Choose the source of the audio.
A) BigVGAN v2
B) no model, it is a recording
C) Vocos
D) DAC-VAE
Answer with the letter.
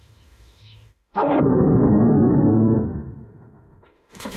D